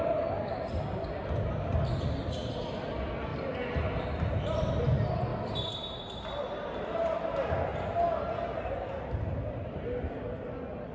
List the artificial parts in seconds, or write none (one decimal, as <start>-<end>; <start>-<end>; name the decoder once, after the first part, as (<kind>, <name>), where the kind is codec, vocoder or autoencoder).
5.3-6.4 (vocoder, BigVGAN v2)